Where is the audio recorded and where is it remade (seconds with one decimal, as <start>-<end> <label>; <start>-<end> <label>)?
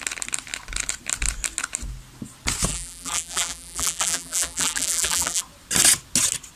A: 0.0-2.7 recorded; 2.7-5.4 remade; 5.4-6.6 recorded